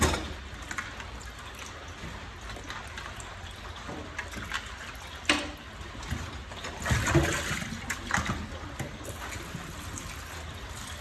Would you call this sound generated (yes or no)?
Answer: no